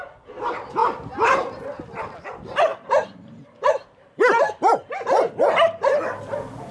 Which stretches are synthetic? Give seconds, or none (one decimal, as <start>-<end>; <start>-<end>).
0.8-1.4; 2.7-4.9